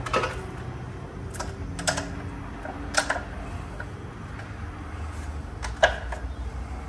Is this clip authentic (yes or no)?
yes